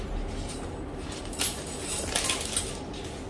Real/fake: real